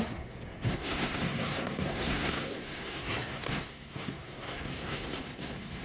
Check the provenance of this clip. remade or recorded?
remade